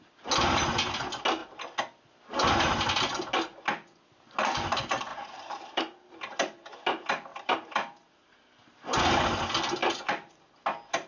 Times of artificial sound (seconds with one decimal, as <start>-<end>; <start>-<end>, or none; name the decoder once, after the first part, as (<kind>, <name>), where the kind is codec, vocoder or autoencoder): 5.1-5.8 (vocoder, BigVGAN v2); 7.3-9.0; 9.8-10.5